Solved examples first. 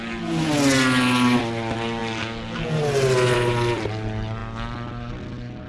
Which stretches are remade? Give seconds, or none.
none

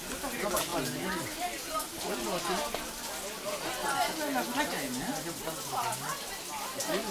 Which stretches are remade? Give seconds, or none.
none

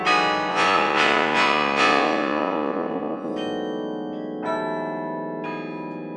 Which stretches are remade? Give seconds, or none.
0.5-3.3 (vocoder, Vocos)